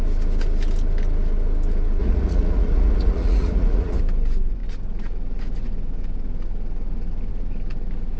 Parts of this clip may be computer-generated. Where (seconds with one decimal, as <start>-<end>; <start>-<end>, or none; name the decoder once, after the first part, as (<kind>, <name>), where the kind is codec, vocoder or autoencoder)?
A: 2.0-4.0 (vocoder, Vocos)